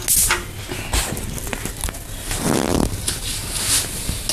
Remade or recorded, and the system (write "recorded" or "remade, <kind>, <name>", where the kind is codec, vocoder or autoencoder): recorded